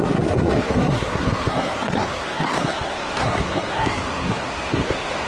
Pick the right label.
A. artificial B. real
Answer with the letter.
A